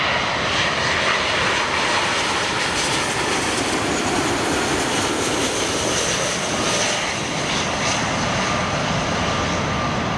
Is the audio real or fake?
real